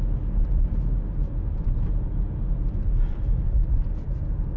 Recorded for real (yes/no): yes